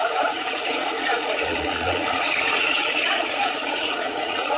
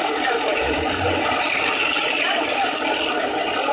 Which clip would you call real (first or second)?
second